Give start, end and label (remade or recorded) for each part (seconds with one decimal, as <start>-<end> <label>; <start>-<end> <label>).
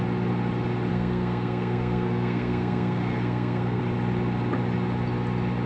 0.0-0.9 recorded; 0.9-3.8 remade; 3.8-5.7 recorded